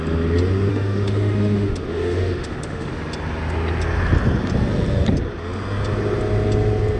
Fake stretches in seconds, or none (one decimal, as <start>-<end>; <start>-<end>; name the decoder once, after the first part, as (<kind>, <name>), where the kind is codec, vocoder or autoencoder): 0.7-2.9 (autoencoder, DAC-VAE)